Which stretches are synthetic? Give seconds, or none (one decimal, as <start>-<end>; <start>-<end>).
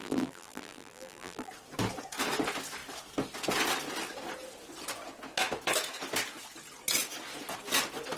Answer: 0.0-1.5